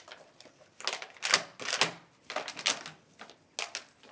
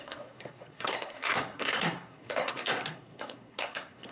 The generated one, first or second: second